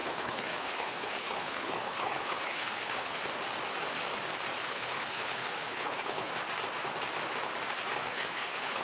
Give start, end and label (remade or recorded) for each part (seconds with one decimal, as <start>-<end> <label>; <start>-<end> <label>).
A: 0.0-3.2 remade; 3.2-4.6 recorded; 4.6-6.3 remade; 6.3-8.0 recorded; 8.0-8.8 remade